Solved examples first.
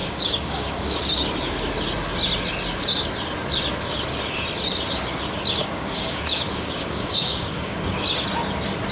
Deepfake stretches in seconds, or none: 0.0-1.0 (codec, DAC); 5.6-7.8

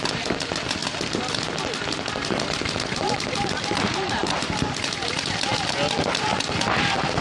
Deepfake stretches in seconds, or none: none

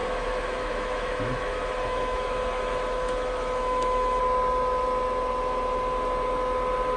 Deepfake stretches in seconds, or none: 0.0-4.2 (autoencoder, DAC-VAE)